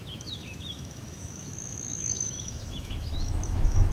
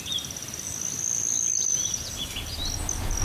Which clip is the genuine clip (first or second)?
second